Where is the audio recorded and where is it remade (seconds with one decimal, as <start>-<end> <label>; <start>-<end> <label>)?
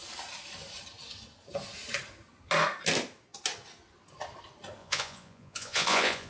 0.0-4.8 recorded; 4.8-6.3 remade